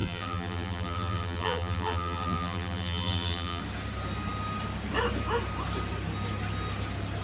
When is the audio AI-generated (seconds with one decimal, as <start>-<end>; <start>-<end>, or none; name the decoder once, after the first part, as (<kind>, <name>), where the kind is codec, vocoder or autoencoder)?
0.0-3.6 (vocoder, BigVGAN v2)